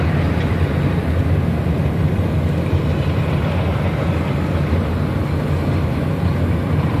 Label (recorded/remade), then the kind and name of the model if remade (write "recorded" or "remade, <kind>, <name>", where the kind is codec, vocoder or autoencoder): recorded